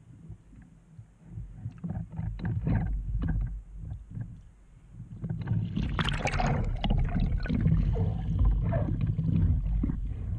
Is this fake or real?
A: real